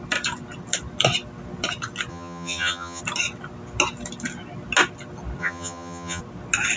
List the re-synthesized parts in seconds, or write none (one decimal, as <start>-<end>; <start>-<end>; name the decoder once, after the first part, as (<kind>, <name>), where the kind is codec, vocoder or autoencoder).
2.1-3.0 (vocoder, HiFi-GAN); 5.4-6.2

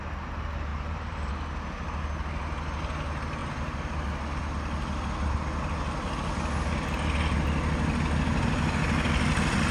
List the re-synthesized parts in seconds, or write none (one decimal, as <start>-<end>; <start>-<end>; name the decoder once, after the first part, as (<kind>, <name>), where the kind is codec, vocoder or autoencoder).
0.7-1.3 (vocoder, BigVGAN v2); 3.4-3.9

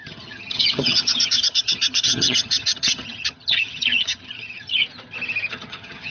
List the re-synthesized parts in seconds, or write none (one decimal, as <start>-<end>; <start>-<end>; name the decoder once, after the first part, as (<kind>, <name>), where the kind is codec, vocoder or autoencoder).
0.0-4.8 (vocoder, HiFi-GAN); 5.5-6.1

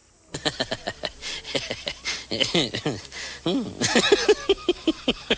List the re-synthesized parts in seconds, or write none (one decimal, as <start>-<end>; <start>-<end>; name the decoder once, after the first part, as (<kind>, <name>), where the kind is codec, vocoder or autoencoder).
none

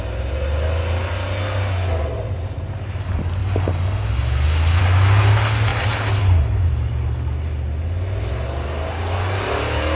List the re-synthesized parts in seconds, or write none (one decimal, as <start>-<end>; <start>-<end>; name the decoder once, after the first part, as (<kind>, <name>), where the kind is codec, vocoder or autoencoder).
none

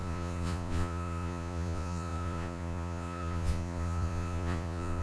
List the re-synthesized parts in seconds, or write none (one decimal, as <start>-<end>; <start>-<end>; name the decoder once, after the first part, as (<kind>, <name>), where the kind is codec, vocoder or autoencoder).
0.0-5.0 (vocoder, Vocos)

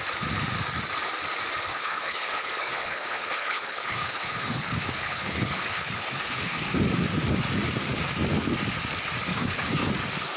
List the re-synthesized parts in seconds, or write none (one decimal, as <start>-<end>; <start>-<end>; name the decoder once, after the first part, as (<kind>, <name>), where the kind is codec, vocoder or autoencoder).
1.7-6.8 (codec, HILCodec); 9.3-9.9